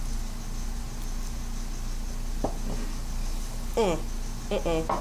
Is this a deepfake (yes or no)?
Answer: no